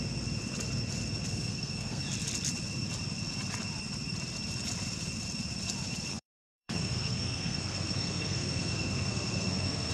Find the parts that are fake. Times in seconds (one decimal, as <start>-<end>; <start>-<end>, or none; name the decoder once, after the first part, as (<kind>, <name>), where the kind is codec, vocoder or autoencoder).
1.3-2.0 (codec, SNAC); 6.1-9.9